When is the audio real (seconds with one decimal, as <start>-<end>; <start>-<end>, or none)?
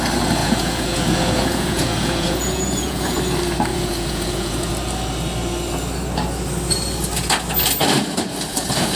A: 0.0-0.4; 3.2-3.7; 4.7-8.5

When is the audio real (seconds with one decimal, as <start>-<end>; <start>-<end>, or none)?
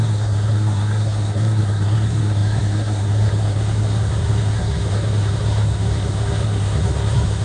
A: none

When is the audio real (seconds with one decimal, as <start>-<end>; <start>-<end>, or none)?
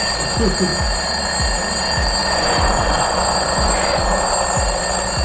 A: 0.0-2.2; 4.0-5.2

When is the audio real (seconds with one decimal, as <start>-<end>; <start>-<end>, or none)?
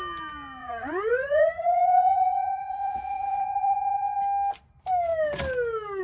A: 0.0-0.6; 4.2-6.0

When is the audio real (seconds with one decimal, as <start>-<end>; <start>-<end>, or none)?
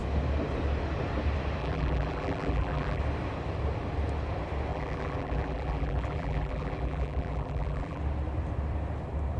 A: 0.0-1.6; 3.0-4.7; 8.0-9.4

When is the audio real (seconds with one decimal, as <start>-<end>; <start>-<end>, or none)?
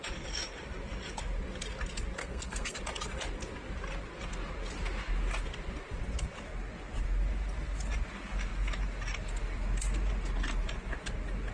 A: 0.0-2.2; 2.8-11.5